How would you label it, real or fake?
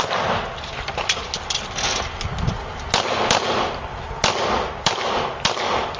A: real